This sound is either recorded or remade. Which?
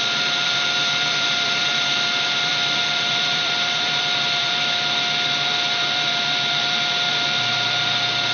remade